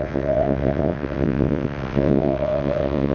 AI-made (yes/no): yes